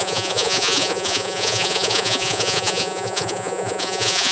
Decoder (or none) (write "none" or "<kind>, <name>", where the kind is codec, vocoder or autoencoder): vocoder, Vocos